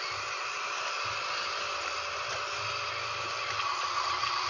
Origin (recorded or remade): recorded